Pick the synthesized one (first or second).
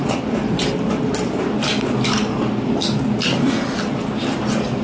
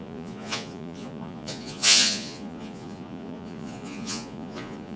second